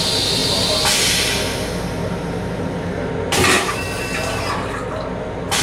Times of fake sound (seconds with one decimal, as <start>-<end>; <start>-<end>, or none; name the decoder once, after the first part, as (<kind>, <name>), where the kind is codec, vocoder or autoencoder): none